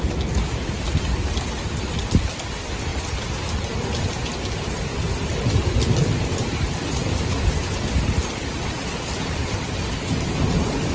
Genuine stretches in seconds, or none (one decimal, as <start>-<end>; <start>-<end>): 0.0-10.9